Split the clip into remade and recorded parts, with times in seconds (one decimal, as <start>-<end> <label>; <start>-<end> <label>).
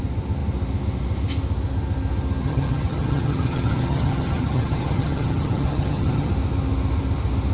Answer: 0.0-2.4 recorded; 2.4-6.3 remade; 6.3-7.5 recorded